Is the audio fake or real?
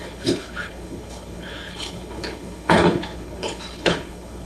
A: fake